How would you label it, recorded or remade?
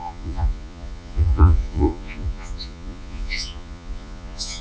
remade